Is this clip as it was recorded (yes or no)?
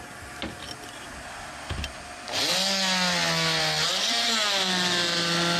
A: yes